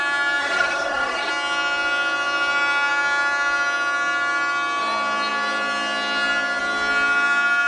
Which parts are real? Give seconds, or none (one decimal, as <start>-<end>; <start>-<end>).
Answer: 0.0-0.4; 1.3-7.7